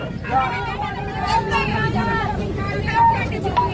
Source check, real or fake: fake